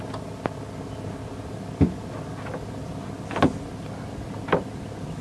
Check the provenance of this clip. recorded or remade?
recorded